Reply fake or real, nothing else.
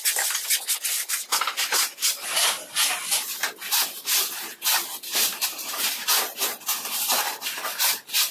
real